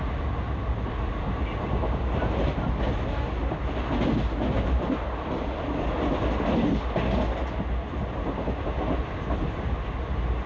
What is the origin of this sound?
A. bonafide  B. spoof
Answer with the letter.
A